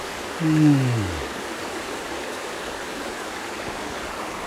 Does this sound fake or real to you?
fake